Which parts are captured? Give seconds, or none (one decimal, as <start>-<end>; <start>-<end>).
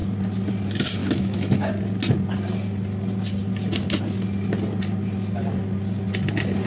0.0-1.0; 1.7-6.7